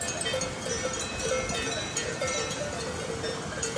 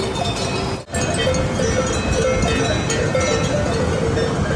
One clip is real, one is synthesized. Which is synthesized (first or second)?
first